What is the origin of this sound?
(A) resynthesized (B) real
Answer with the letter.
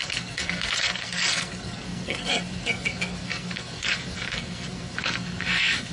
A